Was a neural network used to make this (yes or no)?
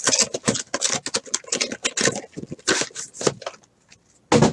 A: no